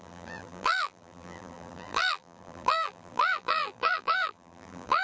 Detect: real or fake fake